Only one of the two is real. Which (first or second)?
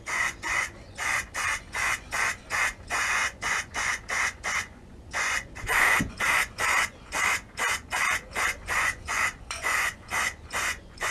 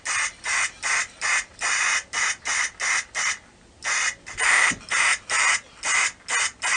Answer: second